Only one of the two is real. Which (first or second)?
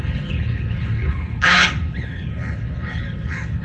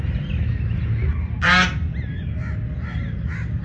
second